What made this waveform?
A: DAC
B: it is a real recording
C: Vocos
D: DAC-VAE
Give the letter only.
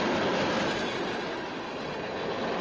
B